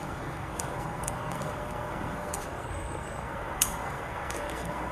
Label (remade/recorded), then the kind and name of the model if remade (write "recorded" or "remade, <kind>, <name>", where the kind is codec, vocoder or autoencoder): remade, codec, SNAC